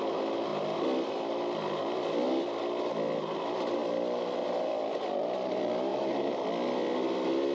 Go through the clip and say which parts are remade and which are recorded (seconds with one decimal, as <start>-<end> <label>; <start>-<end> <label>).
0.0-5.9 recorded; 5.9-6.4 remade; 6.4-7.5 recorded

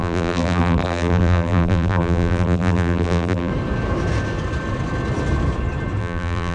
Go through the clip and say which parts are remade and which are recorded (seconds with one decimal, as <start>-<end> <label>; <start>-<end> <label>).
0.0-3.5 remade; 3.5-6.0 recorded; 6.0-6.5 remade

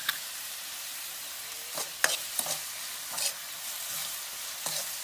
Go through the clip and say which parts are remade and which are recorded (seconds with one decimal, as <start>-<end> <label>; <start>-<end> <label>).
0.0-1.8 remade; 1.8-4.0 recorded; 4.0-4.6 remade; 4.6-5.0 recorded